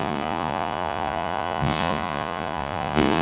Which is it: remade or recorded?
remade